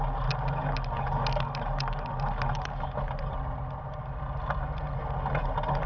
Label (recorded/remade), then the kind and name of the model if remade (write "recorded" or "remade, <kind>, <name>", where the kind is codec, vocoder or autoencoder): recorded